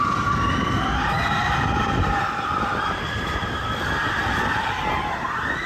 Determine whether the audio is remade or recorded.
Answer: recorded